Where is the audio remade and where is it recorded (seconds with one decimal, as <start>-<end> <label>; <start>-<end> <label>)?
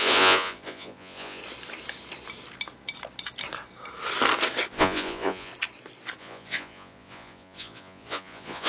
0.0-1.4 remade; 1.4-4.7 recorded; 4.7-5.5 remade; 5.5-6.2 recorded; 6.2-8.7 remade